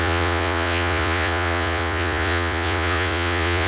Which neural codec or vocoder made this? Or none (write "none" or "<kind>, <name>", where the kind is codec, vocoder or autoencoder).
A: vocoder, Vocos